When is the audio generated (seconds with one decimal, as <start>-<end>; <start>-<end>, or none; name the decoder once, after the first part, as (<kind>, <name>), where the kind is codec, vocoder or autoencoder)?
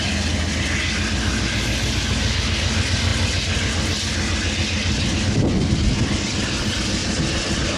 none